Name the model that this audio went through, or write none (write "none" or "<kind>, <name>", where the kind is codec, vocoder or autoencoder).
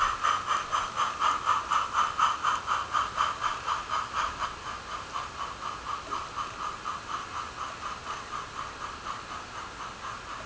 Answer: none